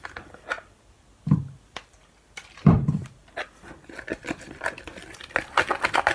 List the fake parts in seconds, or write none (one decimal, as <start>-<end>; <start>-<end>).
none